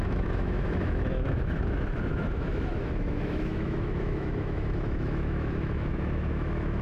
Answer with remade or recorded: remade